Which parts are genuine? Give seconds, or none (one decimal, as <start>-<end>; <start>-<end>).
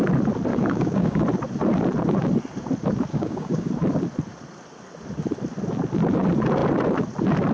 0.0-0.5; 1.2-3.1; 3.7-7.5